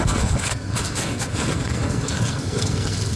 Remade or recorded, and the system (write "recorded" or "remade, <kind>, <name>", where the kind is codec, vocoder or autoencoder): remade, codec, SNAC